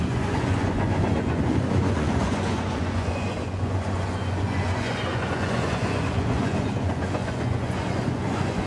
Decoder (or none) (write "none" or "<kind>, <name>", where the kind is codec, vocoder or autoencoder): vocoder, Vocos